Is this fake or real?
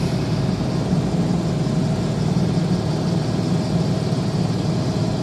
real